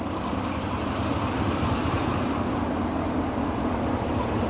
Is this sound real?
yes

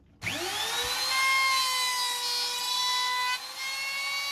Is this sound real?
yes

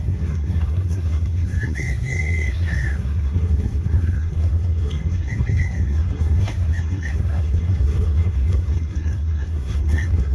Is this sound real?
no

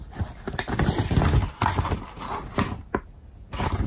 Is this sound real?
yes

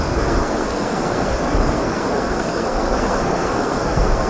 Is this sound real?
no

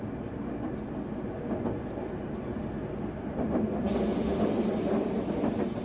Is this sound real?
yes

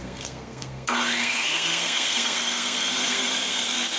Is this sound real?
no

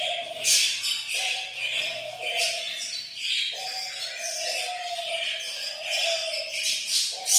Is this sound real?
yes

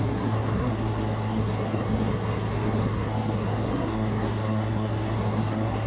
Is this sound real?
no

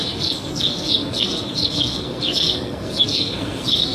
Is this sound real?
no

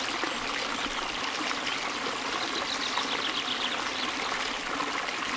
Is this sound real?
yes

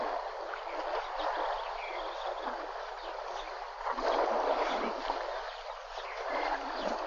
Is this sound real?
yes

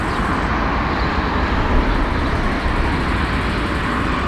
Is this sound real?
yes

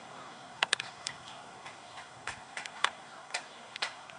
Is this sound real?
no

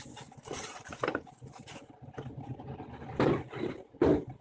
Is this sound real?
yes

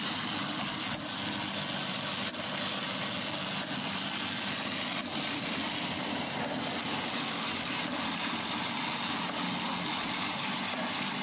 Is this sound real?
yes